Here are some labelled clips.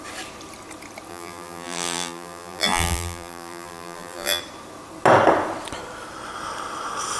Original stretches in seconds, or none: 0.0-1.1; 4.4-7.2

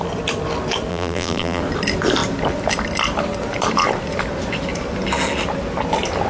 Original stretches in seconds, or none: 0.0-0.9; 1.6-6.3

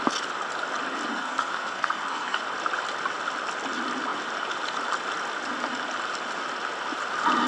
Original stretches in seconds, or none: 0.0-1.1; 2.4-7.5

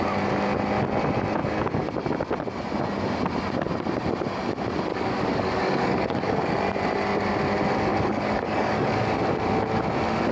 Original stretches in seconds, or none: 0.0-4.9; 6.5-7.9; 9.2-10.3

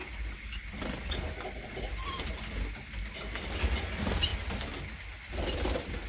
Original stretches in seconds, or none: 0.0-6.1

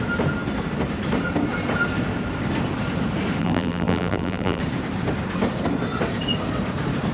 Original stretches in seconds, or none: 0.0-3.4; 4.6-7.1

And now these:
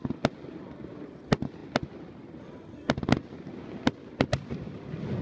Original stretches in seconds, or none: 0.0-5.2

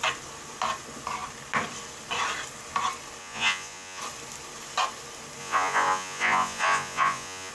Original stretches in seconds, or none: 0.0-3.2; 4.0-5.4